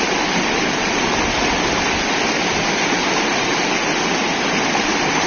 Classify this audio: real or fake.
real